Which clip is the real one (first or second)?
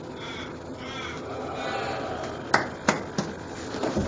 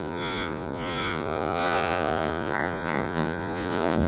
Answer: first